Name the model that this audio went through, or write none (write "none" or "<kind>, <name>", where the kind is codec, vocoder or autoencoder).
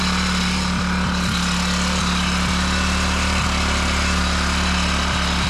none